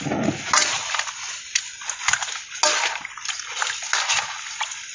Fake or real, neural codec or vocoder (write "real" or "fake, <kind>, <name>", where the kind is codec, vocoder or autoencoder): real